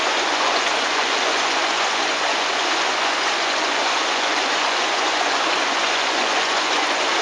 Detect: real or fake fake